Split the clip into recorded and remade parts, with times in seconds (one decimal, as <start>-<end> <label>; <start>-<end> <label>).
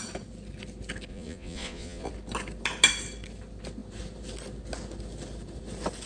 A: 0.0-1.1 recorded; 1.1-2.1 remade; 2.1-6.1 recorded